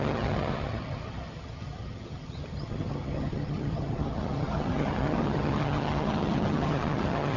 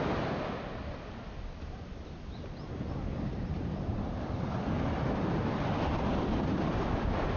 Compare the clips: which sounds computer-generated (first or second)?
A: first